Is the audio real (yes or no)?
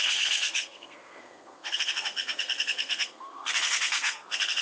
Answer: no